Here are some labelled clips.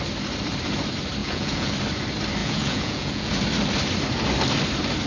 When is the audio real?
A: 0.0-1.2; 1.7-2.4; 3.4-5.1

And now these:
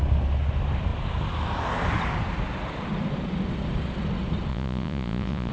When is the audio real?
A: 0.0-4.5